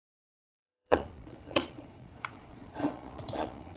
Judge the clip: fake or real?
fake